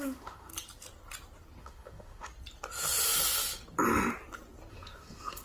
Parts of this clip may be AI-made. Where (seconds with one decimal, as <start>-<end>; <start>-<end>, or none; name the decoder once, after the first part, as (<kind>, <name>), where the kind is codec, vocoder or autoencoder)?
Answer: 0.0-0.5 (autoencoder, DAC-VAE); 1.6-2.3; 4.7-5.4